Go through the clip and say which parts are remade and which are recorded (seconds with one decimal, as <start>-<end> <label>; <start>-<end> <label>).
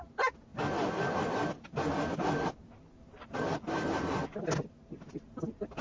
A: 0.0-5.8 recorded